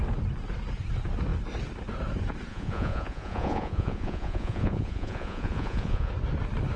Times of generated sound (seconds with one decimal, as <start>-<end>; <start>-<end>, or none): 2.5-6.1